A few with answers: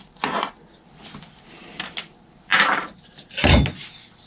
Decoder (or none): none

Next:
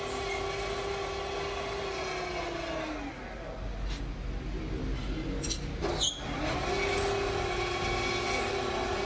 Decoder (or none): none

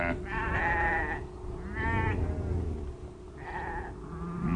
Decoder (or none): none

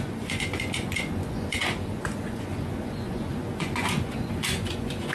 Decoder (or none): vocoder, Vocos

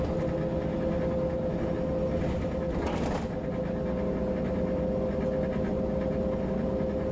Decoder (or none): none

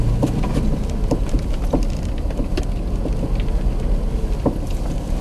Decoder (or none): none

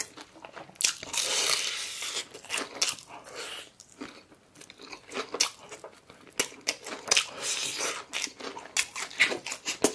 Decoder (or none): none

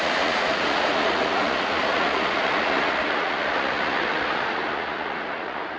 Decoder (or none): vocoder, Vocos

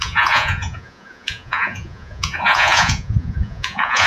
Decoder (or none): vocoder, Vocos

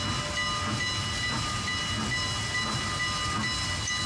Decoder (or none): none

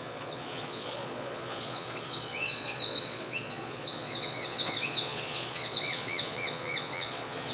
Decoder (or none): vocoder, Vocos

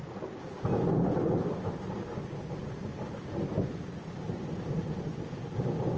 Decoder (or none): none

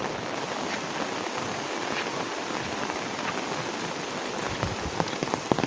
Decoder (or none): none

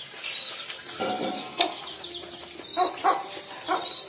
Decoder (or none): none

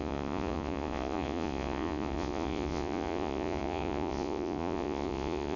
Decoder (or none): vocoder, Vocos